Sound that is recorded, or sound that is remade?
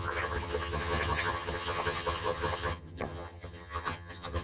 remade